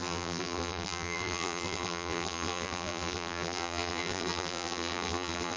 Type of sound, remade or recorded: remade